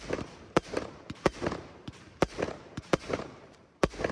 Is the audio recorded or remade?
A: remade